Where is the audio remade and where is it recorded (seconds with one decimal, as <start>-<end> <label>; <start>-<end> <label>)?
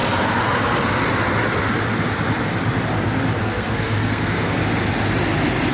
0.0-3.4 recorded; 3.4-4.6 remade; 4.6-5.7 recorded